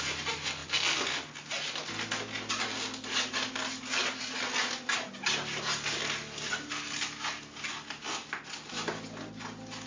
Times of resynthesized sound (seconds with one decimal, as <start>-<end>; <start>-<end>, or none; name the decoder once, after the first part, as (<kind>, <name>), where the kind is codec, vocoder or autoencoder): none